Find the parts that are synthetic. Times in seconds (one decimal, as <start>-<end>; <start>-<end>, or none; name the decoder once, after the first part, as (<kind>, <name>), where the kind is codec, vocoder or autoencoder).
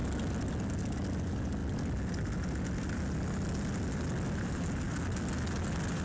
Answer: none